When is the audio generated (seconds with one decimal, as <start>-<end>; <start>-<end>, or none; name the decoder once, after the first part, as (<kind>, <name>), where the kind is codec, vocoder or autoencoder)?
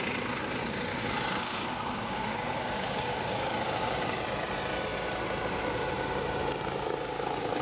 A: 0.9-4.2 (codec, DAC)